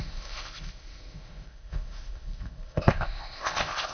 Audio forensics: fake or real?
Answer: fake